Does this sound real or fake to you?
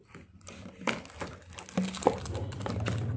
real